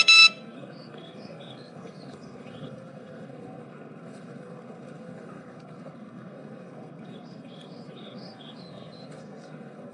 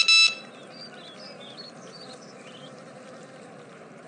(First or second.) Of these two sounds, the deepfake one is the first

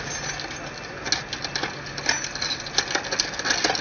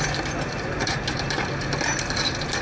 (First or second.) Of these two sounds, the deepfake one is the second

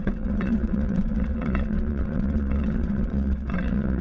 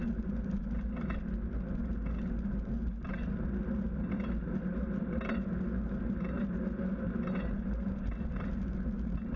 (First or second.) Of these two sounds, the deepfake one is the first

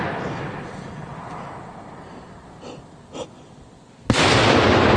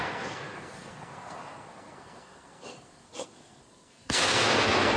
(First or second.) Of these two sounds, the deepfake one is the second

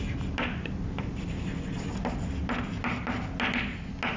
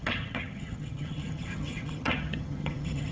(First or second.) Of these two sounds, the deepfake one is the second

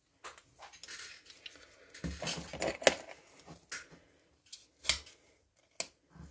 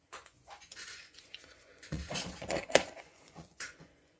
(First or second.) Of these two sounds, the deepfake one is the second